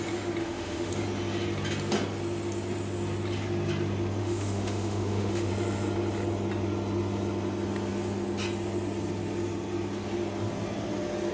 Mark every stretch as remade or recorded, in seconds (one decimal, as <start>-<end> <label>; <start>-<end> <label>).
0.0-0.4 recorded; 0.4-0.9 remade; 0.9-4.2 recorded; 4.2-5.5 remade; 5.5-11.3 recorded